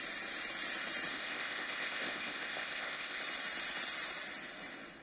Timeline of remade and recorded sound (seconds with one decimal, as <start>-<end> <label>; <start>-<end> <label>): 0.0-1.1 recorded; 1.1-3.2 remade; 3.2-5.0 recorded